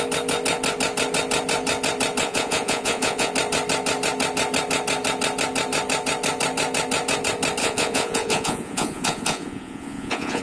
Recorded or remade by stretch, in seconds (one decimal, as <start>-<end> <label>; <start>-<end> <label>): 0.0-2.2 recorded; 2.2-3.3 remade; 3.3-7.6 recorded; 7.6-10.4 remade